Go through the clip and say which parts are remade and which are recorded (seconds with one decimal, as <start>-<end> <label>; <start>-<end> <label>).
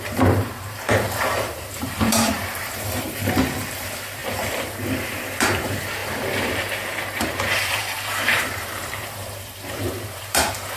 0.0-10.8 remade